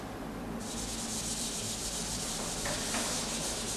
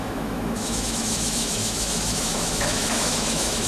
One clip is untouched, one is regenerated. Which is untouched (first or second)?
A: first